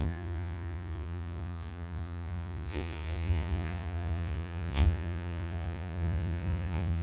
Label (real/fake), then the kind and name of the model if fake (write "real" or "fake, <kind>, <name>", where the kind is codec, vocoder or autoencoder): fake, vocoder, Vocos